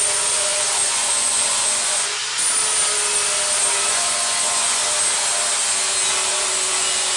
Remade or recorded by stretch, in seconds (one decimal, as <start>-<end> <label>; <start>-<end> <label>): 0.0-2.2 remade; 2.2-3.9 recorded; 3.9-4.8 remade; 4.8-6.5 recorded; 6.5-7.2 remade